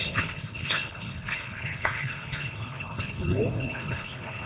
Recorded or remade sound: remade